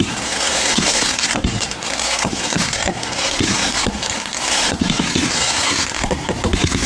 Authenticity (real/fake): fake